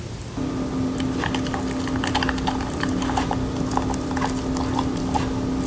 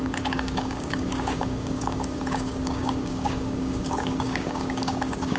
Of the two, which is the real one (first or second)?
first